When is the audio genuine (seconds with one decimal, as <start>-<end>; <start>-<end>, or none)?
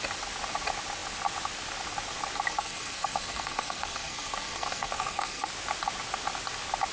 0.0-2.5; 5.5-6.9